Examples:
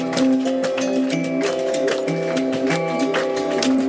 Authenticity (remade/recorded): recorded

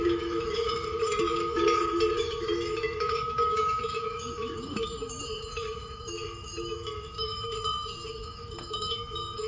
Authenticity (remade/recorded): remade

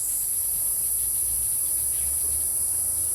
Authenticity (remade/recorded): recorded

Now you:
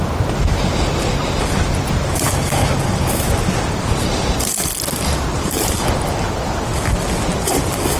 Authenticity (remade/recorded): recorded